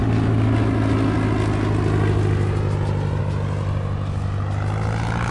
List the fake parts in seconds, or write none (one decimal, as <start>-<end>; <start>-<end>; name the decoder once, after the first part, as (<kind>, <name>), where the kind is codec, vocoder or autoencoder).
none